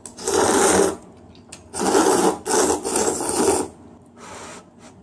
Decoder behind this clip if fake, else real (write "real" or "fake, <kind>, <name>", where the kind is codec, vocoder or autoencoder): real